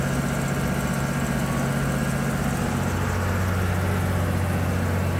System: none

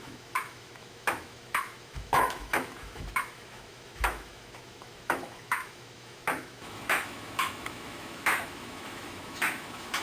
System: autoencoder, DAC-VAE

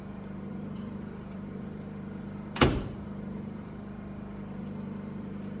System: vocoder, BigVGAN v2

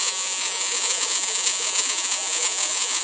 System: vocoder, Vocos